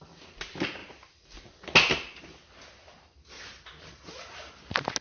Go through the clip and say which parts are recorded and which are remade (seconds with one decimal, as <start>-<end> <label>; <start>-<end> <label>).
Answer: 0.0-5.0 recorded